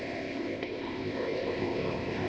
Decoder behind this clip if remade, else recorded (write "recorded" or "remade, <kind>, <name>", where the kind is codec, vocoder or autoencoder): remade, codec, ZipCodec